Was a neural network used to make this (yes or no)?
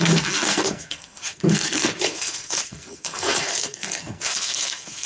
yes